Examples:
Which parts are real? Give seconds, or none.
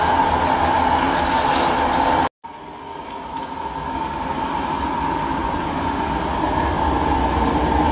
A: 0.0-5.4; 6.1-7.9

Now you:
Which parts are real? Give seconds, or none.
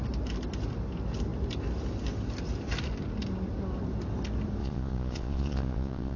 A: 0.0-4.6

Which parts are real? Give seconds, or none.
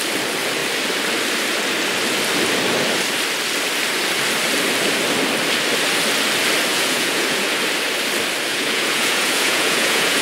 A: 0.0-6.7; 7.5-8.5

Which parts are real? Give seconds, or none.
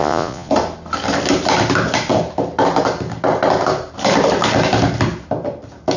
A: 0.5-6.0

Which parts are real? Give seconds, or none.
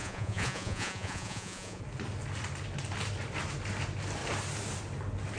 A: 1.8-5.4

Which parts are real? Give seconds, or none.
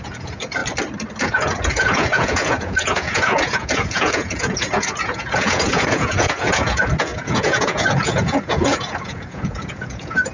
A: 0.6-1.2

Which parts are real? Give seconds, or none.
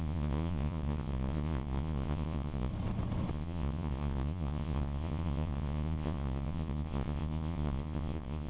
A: 2.7-3.3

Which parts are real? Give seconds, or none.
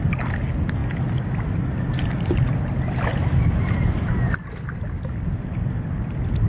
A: 0.0-6.5